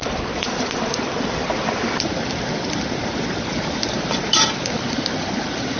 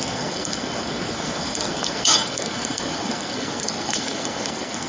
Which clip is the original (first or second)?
first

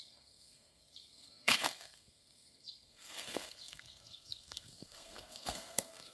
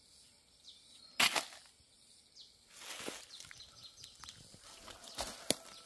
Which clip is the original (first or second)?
second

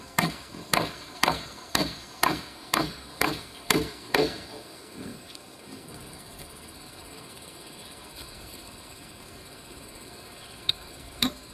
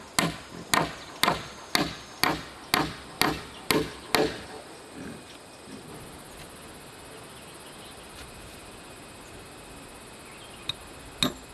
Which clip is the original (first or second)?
second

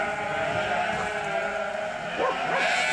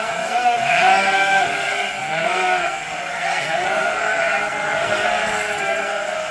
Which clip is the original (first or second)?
first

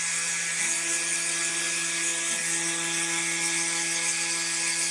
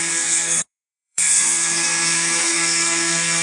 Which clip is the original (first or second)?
first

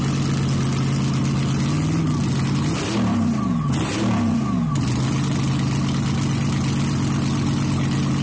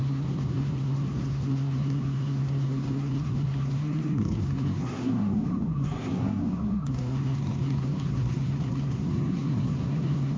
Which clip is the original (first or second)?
first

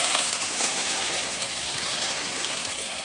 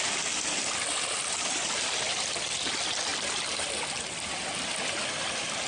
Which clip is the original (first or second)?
second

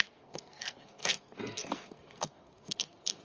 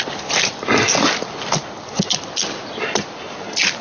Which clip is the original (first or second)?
second